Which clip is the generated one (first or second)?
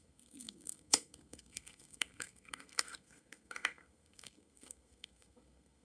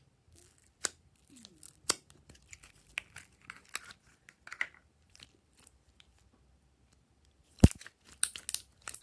first